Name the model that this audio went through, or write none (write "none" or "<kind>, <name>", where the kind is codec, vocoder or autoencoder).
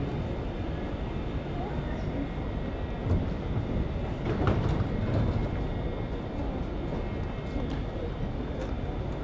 none